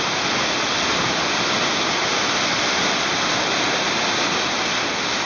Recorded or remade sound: recorded